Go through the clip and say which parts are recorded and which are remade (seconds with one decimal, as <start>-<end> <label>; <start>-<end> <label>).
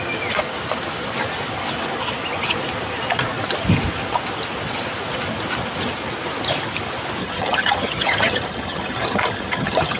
0.0-7.2 recorded; 7.2-10.0 remade